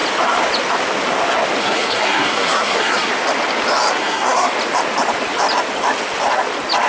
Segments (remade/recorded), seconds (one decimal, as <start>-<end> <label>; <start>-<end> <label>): 0.0-1.6 recorded; 1.6-3.1 remade; 3.1-3.9 recorded; 3.9-4.5 remade; 4.5-6.9 recorded